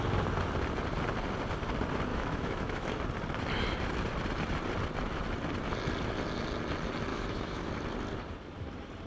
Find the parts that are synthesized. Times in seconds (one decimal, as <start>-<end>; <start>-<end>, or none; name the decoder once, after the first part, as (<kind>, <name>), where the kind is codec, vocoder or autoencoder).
2.1-3.0 (autoencoder, DAC-VAE); 7.1-7.7